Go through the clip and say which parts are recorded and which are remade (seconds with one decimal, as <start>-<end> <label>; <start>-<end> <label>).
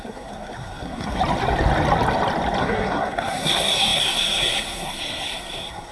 0.0-1.2 remade; 1.2-2.6 recorded; 2.6-5.9 remade